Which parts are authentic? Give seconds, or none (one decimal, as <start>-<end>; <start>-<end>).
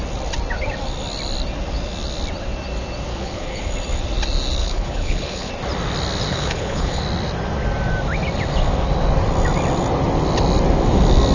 0.0-3.1; 3.7-4.6; 5.5-6.3; 7.0-11.3